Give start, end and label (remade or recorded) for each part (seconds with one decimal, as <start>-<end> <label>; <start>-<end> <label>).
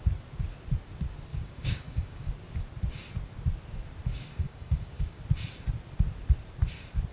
0.0-1.3 recorded; 1.3-2.3 remade; 2.3-4.1 recorded; 4.1-5.2 remade; 5.2-7.1 recorded